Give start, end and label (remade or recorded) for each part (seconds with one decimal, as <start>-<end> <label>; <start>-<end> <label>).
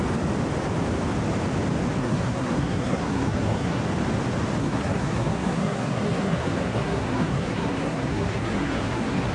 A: 0.0-2.0 recorded; 2.0-3.8 remade; 3.8-4.6 recorded; 4.6-9.3 remade